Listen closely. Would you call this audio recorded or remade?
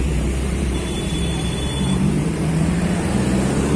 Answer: remade